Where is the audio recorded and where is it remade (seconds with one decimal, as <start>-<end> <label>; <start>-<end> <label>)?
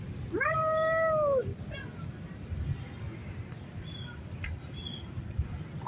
0.0-5.9 recorded